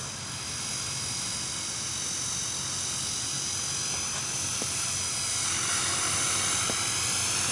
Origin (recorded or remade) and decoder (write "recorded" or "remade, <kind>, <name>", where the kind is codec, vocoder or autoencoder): recorded